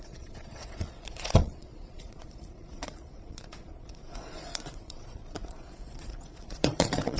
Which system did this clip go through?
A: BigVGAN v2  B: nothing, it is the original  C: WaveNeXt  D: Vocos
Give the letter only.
D